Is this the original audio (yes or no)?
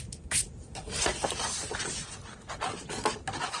yes